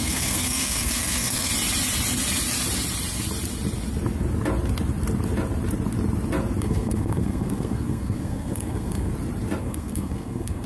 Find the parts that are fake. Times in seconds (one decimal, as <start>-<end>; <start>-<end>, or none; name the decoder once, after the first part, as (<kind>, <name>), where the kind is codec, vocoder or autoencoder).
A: 0.0-1.5 (codec, SNAC); 6.6-9.1; 9.6-10.7